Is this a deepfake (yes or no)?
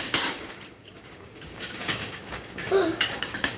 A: yes